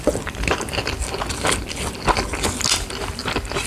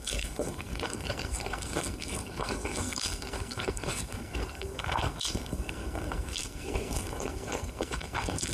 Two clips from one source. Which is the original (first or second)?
first